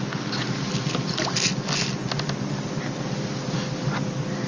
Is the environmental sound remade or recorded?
recorded